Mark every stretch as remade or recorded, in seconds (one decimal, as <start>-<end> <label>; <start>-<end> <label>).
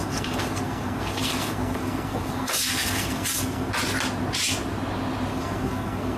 0.0-3.7 remade; 3.7-5.3 recorded; 5.3-6.2 remade